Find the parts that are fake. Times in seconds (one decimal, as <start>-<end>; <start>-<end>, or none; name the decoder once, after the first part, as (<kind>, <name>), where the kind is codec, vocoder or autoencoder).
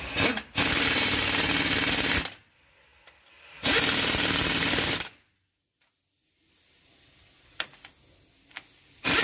none